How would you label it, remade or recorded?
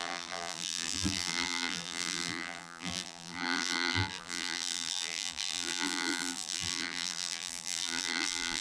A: remade